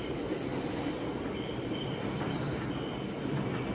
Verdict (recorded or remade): recorded